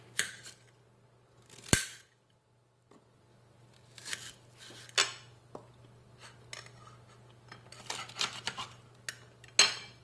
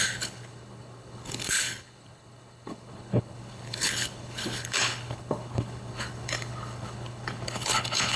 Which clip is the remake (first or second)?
second